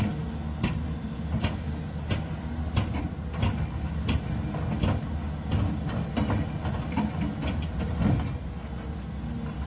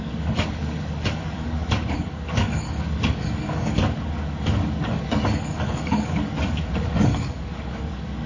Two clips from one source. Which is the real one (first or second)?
first